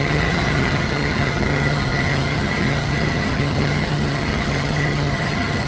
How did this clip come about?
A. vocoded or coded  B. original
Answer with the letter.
A